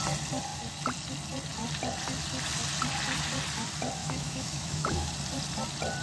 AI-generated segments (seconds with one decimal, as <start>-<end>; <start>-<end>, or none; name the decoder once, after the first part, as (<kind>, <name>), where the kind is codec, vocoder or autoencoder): 4.0-5.1 (autoencoder, DAC-VAE)